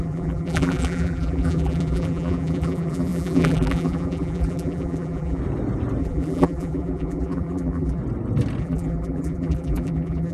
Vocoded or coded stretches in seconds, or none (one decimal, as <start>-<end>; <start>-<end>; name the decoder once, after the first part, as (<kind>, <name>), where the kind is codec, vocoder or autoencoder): 0.0-5.4 (vocoder, BigVGAN v2); 6.0-8.0; 8.6-10.3